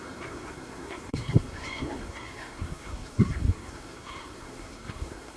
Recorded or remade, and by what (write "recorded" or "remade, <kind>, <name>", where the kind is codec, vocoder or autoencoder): remade, codec, SNAC